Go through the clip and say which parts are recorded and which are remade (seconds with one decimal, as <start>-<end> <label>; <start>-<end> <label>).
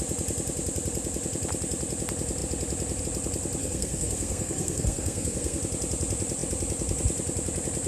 0.0-3.6 recorded; 3.6-5.6 remade; 5.6-7.9 recorded